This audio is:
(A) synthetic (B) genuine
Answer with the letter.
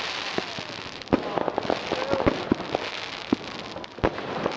B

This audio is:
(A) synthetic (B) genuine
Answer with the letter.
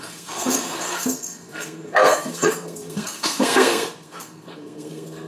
A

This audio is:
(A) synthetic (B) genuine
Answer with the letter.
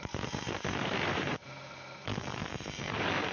A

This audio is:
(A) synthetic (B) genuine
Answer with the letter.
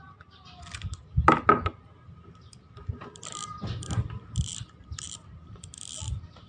A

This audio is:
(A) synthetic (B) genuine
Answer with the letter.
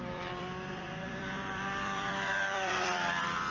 A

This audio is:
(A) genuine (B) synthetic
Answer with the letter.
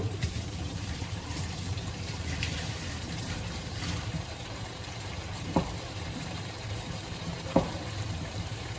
B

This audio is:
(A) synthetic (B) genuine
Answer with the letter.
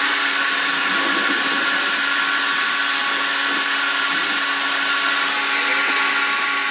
B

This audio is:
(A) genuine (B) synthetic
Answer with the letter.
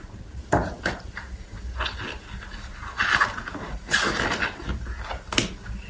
A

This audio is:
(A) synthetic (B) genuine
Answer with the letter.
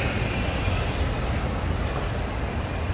A